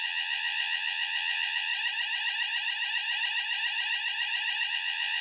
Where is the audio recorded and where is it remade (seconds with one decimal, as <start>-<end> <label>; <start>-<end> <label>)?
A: 0.0-1.7 remade; 1.7-4.7 recorded; 4.7-5.2 remade

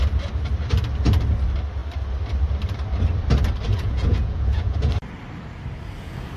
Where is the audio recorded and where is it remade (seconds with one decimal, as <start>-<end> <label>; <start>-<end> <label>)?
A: 0.0-3.7 recorded; 3.7-4.9 remade; 4.9-6.4 recorded